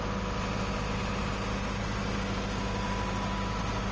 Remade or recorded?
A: recorded